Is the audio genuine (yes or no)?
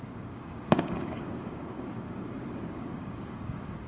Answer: no